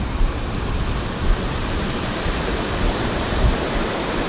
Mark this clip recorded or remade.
remade